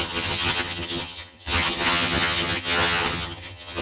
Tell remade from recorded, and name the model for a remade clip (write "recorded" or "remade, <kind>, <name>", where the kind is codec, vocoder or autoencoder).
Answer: remade, vocoder, HiFi-GAN